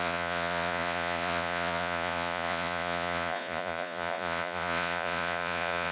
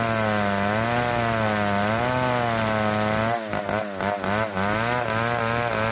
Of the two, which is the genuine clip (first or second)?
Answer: second